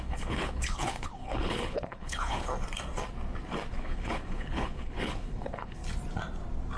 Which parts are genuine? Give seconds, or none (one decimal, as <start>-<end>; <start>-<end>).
2.5-3.7; 5.8-6.8